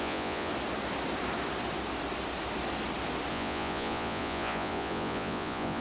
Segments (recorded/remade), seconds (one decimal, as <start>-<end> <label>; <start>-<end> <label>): 0.0-0.5 remade; 0.5-3.3 recorded; 3.3-5.8 remade